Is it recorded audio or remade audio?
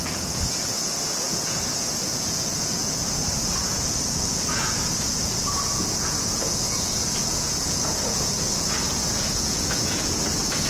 remade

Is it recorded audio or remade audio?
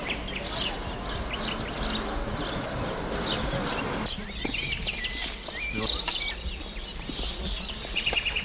recorded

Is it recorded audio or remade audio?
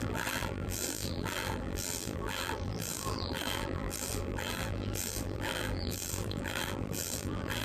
remade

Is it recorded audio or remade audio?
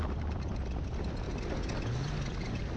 recorded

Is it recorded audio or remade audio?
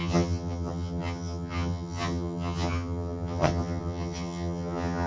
remade